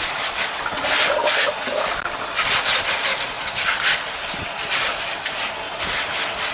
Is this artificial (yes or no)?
no